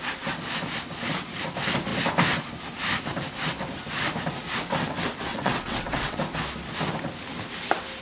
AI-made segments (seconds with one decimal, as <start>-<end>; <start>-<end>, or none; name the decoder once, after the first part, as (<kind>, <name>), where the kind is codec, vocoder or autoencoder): 5.3-6.2 (vocoder, WaveNeXt)